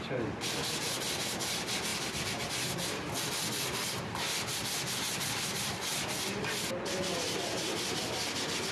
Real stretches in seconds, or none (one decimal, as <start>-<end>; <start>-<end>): 0.0-1.9; 3.3-4.5; 6.0-8.7